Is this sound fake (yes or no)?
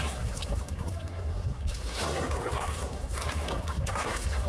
yes